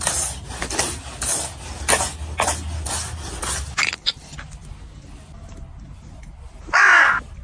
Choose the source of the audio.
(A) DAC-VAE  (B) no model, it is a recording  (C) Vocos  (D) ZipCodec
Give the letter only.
B